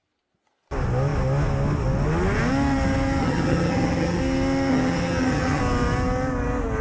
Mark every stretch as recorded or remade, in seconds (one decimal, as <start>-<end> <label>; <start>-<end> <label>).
0.0-3.2 recorded; 3.2-4.2 remade; 4.2-4.7 recorded; 4.7-5.6 remade; 5.6-6.8 recorded